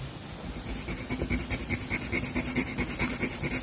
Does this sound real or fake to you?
real